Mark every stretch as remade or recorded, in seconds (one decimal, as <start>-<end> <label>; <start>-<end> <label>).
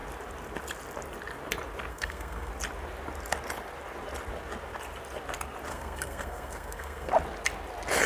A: 0.0-1.9 recorded; 1.9-2.5 remade; 2.5-5.7 recorded; 5.7-7.1 remade; 7.1-8.1 recorded